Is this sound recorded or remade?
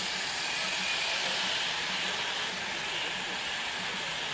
recorded